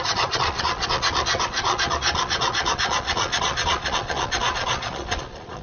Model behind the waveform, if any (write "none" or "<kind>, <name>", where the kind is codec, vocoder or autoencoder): vocoder, Vocos